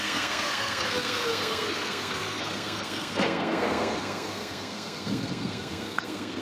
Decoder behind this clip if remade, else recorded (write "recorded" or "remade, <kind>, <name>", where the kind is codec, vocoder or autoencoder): remade, codec, SNAC